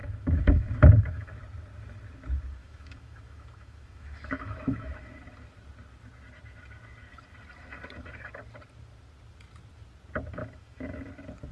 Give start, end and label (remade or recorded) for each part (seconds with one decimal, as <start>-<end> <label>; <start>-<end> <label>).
0.0-1.3 remade; 1.3-2.6 recorded; 2.6-5.2 remade; 5.2-10.4 recorded; 10.4-11.1 remade; 11.1-11.5 recorded